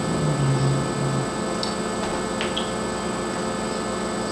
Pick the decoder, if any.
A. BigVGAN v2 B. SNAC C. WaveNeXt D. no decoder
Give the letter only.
D